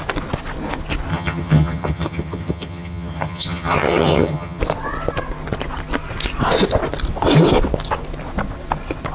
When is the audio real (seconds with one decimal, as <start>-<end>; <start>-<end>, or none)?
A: 0.0-1.1; 4.6-9.1